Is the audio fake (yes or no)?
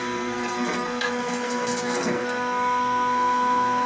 yes